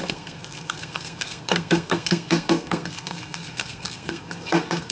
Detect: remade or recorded remade